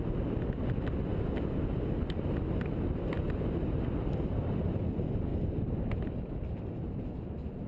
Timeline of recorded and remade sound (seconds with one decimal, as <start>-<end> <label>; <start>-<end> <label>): 0.0-7.7 recorded